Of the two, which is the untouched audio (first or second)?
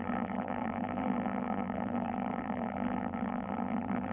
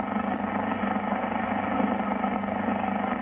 second